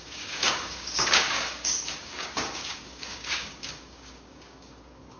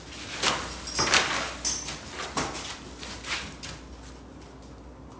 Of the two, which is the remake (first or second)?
first